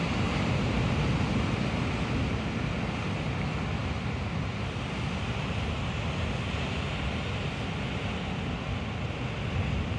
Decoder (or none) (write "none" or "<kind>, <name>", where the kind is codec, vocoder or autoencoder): none